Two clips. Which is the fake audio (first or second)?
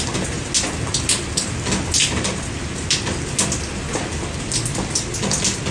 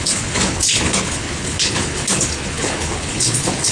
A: second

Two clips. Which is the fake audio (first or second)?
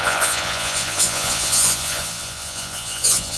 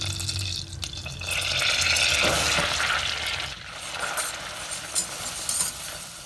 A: first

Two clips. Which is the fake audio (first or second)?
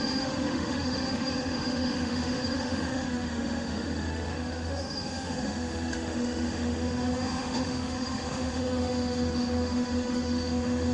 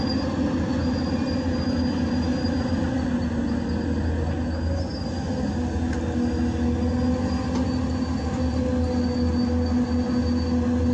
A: first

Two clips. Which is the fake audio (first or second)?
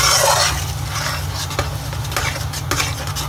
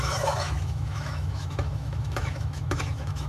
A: second